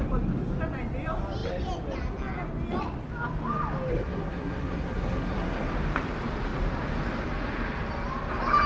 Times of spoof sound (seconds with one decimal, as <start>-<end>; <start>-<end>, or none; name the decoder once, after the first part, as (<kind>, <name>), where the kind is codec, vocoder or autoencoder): 3.9-5.7 (codec, SNAC)